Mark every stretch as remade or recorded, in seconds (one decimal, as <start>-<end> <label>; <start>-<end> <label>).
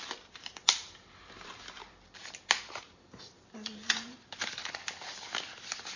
0.0-1.8 remade; 1.8-2.6 recorded; 2.6-4.6 remade; 4.6-6.0 recorded